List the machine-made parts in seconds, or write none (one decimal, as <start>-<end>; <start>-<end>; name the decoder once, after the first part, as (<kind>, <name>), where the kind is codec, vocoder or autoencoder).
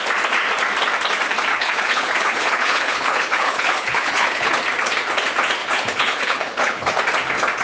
1.5-4.5 (codec, HILCodec); 5.6-6.9